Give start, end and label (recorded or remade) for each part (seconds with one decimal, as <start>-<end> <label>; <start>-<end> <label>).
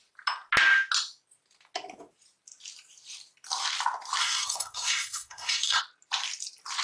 0.0-4.2 recorded; 4.2-5.8 remade; 5.8-6.8 recorded